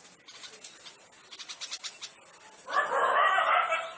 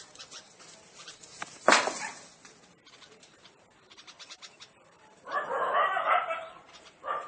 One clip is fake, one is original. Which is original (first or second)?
first